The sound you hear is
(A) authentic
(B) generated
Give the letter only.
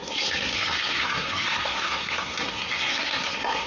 B